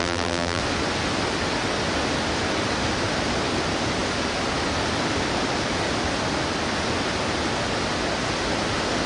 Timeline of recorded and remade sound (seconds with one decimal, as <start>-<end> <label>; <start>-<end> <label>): 0.0-0.6 remade; 0.6-9.1 recorded